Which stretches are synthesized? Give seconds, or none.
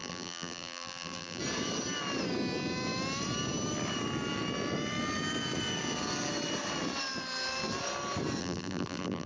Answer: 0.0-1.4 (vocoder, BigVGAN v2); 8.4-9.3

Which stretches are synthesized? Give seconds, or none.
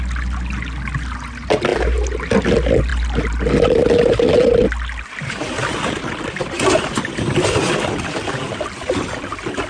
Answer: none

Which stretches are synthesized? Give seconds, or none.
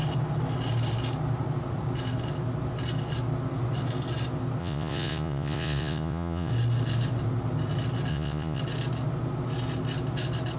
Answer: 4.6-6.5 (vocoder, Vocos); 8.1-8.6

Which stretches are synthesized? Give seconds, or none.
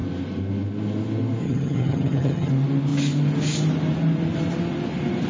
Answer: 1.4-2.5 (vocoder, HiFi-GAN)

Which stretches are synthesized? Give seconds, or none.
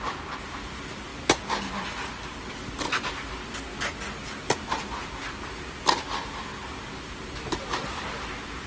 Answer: 0.0-1.1 (vocoder, BigVGAN v2); 4.8-6.5; 7.3-8.7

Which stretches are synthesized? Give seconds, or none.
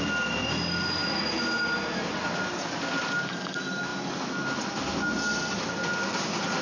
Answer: none